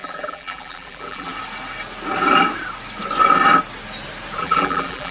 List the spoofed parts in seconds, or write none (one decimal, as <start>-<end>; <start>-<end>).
0.0-1.3; 4.4-5.1